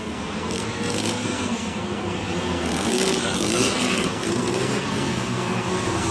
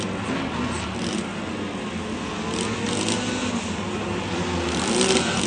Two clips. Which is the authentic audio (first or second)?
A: second